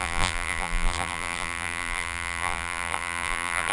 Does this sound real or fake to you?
fake